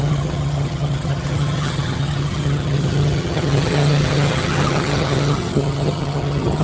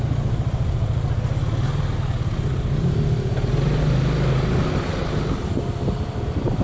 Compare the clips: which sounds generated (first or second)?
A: first